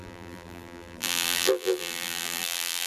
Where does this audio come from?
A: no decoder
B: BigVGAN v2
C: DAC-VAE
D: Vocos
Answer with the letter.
B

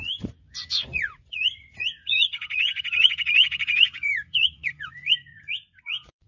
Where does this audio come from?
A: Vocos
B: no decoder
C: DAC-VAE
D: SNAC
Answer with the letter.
A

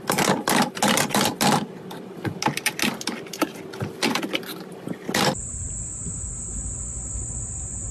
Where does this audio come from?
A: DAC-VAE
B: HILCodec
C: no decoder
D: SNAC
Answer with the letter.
C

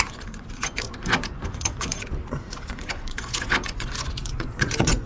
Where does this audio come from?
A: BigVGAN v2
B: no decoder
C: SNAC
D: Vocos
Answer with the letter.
D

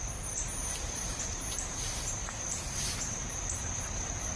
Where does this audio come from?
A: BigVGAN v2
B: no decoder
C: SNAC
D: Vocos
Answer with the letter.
A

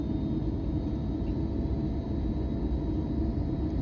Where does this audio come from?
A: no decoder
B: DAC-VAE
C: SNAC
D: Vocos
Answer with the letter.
A